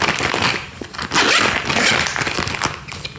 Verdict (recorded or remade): recorded